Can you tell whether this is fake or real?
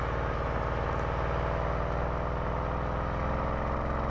real